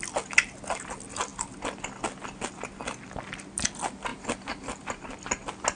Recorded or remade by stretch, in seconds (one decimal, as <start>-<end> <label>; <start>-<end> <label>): 0.0-5.8 recorded